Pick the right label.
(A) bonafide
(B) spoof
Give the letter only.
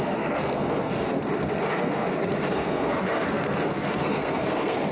B